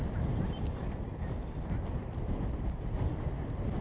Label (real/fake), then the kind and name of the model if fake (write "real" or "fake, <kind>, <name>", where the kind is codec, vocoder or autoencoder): real